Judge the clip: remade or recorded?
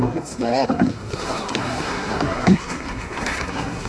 remade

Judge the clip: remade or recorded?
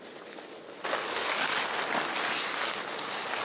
recorded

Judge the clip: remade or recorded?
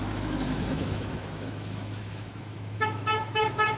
remade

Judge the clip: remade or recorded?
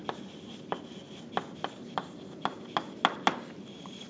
recorded